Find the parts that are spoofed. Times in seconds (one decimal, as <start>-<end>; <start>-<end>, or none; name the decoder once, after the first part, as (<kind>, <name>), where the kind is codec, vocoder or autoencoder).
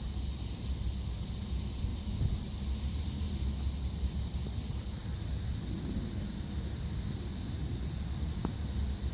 none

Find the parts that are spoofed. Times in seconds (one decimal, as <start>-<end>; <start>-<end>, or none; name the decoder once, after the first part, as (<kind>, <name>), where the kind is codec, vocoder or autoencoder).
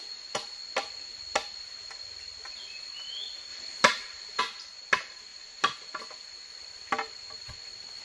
3.5-4.4 (vocoder, BigVGAN v2); 5.3-6.0